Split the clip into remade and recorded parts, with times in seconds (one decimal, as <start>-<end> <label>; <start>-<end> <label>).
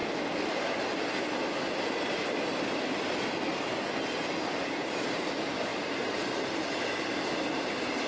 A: 0.0-8.1 recorded